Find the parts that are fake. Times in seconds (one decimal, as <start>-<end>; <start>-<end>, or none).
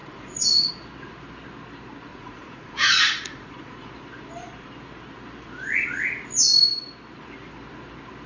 0.0-0.7; 2.1-3.9